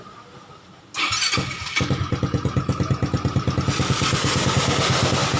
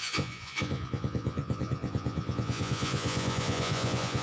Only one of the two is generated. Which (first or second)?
second